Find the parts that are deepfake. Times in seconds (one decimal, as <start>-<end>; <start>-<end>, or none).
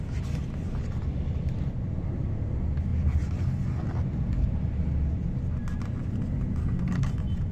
6.6-7.1